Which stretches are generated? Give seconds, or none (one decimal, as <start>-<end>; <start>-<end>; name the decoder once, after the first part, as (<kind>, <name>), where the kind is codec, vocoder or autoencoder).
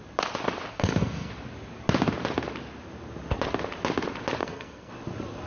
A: 0.7-1.3 (codec, SNAC); 4.4-4.9